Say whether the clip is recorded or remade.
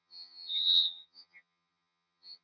remade